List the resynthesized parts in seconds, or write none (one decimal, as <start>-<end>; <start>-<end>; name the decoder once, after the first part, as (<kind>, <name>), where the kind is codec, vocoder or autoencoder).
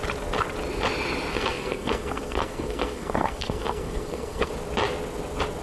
1.3-4.5 (codec, SNAC)